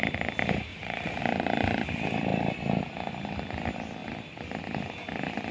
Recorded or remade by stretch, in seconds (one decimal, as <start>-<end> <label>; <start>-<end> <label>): 0.0-0.7 recorded; 0.7-1.2 remade; 1.2-5.5 recorded